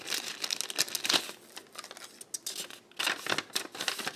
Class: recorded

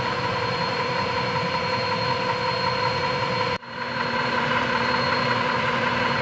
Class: remade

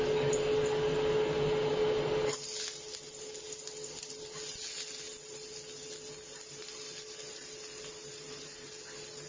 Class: recorded